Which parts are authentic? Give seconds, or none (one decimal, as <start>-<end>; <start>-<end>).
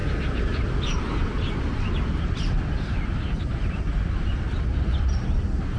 none